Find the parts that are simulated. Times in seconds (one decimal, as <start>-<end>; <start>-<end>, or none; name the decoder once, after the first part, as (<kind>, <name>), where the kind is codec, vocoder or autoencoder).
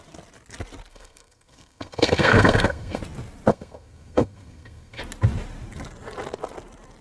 0.9-3.0 (codec, SNAC); 3.5-5.0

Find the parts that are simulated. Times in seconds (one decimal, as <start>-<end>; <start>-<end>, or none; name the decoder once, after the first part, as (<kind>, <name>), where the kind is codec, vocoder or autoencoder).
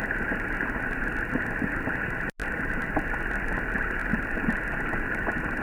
2.4-3.0 (vocoder, BigVGAN v2); 4.0-4.6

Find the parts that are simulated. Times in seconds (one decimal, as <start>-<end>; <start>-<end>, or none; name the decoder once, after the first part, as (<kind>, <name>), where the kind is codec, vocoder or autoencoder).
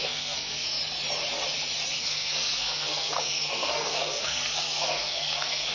0.0-0.8 (codec, SNAC); 1.9-5.7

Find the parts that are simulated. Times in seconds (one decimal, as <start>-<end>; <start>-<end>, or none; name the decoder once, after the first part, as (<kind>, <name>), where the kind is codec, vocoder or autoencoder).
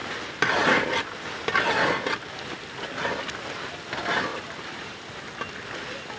4.3-5.2 (vocoder, BigVGAN v2)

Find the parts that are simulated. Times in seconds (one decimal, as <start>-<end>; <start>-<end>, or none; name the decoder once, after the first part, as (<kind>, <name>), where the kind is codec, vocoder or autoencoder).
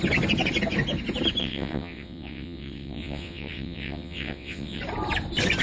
1.4-4.8 (vocoder, WaveNeXt)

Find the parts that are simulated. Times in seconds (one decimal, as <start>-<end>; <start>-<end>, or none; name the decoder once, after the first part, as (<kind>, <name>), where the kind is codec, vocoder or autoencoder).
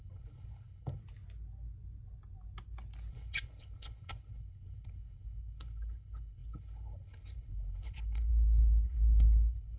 0.0-1.0 (codec, HILCodec); 3.1-9.8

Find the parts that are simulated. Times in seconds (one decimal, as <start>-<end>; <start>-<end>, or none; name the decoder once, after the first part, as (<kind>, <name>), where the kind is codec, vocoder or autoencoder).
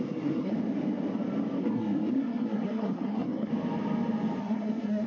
0.0-0.5 (codec, SNAC); 1.6-3.5; 4.4-5.1